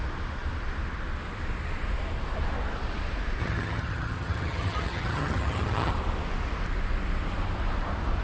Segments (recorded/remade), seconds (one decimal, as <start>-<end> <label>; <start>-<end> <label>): 0.0-3.4 recorded; 3.4-5.9 remade; 5.9-8.2 recorded